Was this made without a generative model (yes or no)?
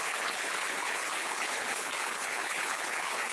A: no